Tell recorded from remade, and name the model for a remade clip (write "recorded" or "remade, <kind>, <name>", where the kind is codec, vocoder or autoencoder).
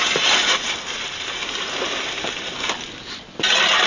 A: recorded